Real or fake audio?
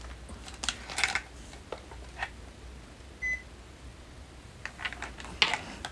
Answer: real